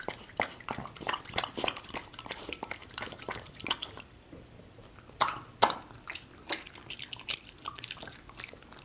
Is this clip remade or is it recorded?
remade